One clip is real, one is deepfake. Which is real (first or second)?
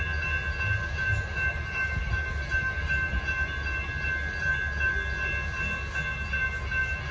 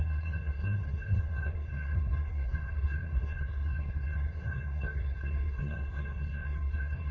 first